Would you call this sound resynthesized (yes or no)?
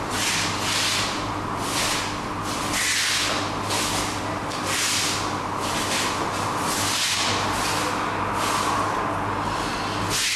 no